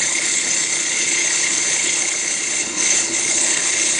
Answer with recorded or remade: remade